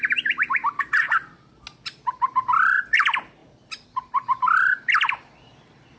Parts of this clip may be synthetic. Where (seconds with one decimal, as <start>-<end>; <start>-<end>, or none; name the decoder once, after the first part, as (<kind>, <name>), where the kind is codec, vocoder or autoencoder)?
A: 0.6-1.3 (vocoder, BigVGAN v2); 3.4-6.0